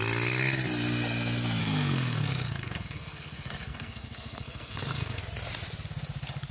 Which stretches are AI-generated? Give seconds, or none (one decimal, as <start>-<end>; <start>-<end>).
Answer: 1.6-5.2